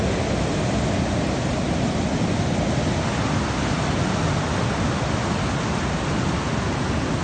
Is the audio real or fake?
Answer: real